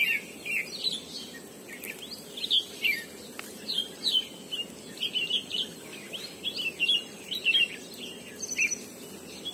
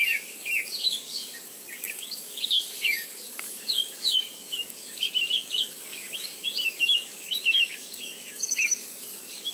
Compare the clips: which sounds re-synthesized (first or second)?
second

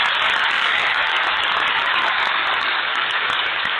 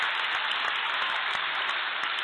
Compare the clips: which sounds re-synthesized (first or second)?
first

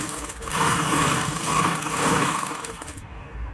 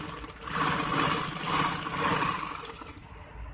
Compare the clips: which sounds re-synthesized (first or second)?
first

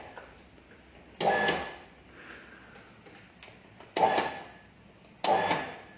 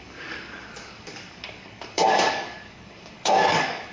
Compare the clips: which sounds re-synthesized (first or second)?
second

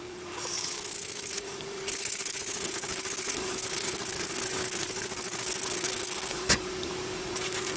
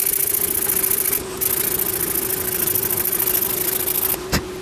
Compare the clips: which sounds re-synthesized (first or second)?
first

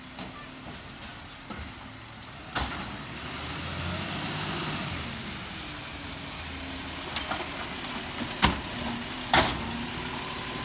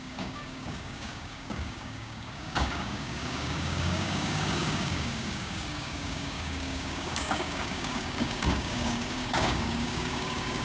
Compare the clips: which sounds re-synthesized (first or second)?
second